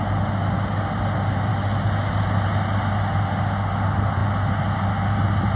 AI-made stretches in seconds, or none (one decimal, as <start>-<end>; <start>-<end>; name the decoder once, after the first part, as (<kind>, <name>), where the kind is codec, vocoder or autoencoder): none